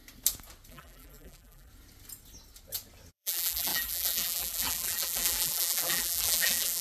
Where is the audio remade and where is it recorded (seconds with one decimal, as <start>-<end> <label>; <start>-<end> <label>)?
0.0-0.7 recorded; 0.7-1.7 remade; 1.7-3.1 recorded; 3.1-6.8 remade